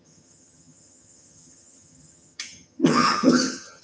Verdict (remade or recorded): remade